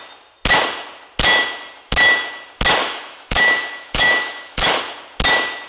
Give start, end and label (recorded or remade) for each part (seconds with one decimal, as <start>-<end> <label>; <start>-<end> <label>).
0.0-2.8 recorded; 2.8-4.8 remade; 4.8-5.7 recorded